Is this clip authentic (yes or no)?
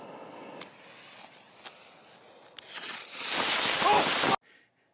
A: yes